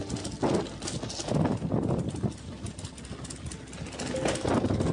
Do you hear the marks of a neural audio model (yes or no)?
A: no